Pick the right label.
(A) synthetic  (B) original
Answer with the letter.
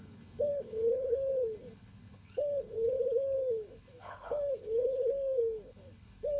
A